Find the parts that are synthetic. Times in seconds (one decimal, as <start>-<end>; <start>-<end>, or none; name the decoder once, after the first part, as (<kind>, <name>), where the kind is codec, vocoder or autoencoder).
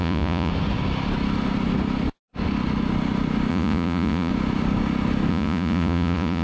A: 0.0-0.5 (vocoder, Vocos); 3.5-4.3; 5.3-6.4